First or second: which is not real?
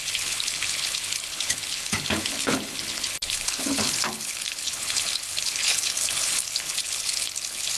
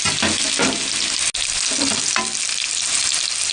first